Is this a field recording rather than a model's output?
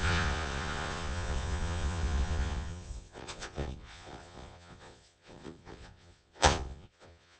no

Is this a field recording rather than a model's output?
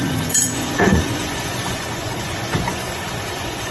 no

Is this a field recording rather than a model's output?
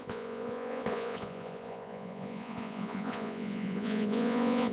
no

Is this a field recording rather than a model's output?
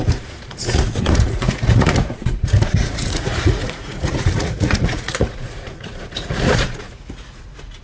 no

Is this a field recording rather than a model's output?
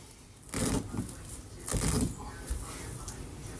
yes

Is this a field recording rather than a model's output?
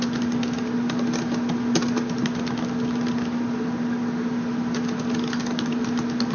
yes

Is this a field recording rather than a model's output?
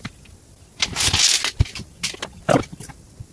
yes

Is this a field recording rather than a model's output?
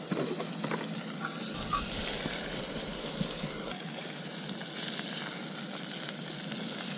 yes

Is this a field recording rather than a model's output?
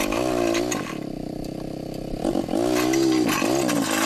yes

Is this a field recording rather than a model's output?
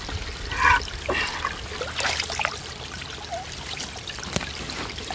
yes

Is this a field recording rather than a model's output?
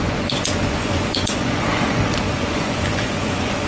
no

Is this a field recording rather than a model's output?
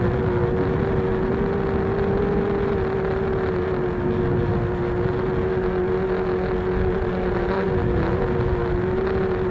yes